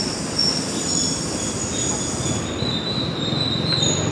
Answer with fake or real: real